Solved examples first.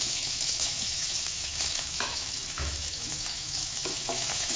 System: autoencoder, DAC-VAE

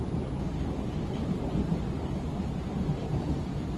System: none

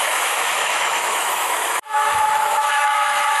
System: autoencoder, DAC-VAE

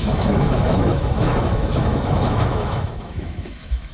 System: autoencoder, DAC-VAE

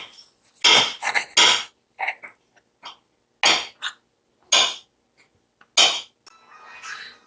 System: none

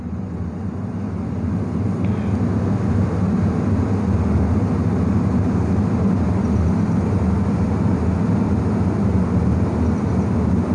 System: none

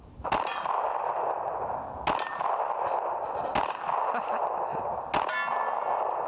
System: none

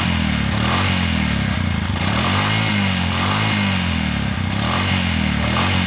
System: none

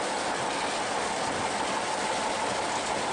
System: none